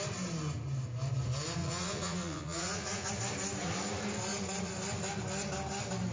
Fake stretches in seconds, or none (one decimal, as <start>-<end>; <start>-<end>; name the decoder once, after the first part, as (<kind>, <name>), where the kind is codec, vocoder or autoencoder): 1.6-3.1 (vocoder, Vocos)

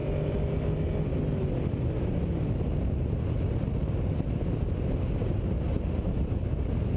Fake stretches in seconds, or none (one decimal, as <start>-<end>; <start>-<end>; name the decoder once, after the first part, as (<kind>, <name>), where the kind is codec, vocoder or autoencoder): none

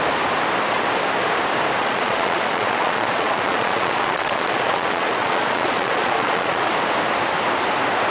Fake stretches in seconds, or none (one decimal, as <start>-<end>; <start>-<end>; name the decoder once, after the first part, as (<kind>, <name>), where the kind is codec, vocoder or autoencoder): 1.8-6.7 (vocoder, Vocos)

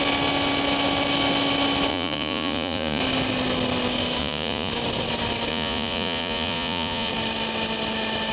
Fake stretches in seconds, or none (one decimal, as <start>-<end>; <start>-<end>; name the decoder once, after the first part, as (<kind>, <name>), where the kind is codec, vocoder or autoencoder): 1.9-3.0 (vocoder, Vocos); 4.2-4.7; 5.5-7.1

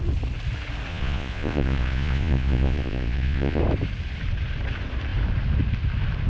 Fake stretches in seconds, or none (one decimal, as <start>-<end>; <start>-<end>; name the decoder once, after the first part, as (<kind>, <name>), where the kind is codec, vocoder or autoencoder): 0.9-3.6 (vocoder, Vocos)

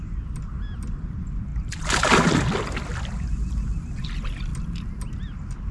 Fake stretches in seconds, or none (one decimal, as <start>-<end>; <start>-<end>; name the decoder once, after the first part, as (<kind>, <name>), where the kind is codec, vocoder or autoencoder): none